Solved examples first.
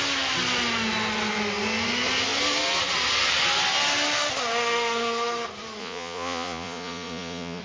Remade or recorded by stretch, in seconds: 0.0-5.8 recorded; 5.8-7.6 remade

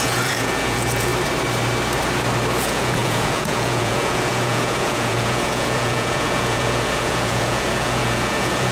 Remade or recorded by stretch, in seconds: 0.0-1.1 remade; 1.1-2.6 recorded; 2.6-8.7 remade

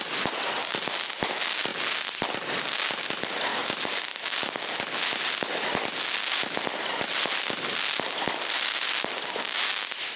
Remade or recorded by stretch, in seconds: 0.0-3.5 recorded; 3.5-4.0 remade; 4.0-10.2 recorded

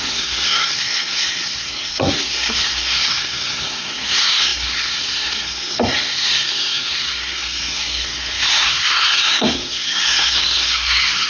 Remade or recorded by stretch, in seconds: 0.0-11.3 remade

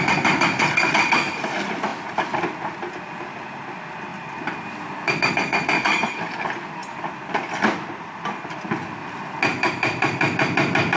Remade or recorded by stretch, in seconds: 0.0-6.8 recorded; 6.8-8.4 remade; 8.4-9.5 recorded; 9.5-11.0 remade

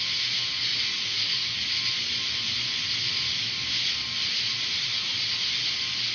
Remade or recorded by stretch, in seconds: 0.0-0.7 recorded; 0.7-1.7 remade; 1.7-4.2 recorded; 4.2-5.3 remade; 5.3-6.1 recorded

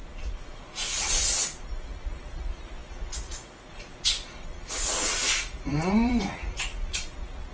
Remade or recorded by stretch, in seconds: 0.0-7.5 remade

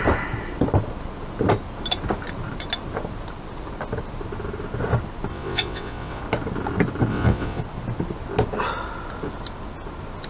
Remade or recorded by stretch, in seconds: 0.0-5.3 recorded; 5.3-6.2 remade; 6.2-7.1 recorded; 7.1-7.6 remade; 7.6-10.3 recorded